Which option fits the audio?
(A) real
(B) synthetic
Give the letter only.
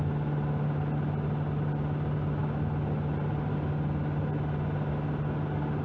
A